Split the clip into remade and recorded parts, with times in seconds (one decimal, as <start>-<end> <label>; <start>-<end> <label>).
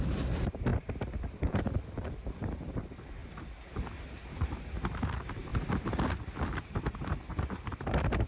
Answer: 0.0-3.2 remade; 3.2-4.3 recorded; 4.3-5.5 remade; 5.5-6.6 recorded; 6.6-8.3 remade